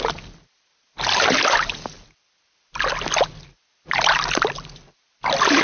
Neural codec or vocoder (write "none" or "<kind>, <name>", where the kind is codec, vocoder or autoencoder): none